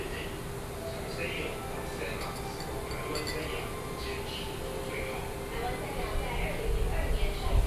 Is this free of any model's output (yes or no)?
yes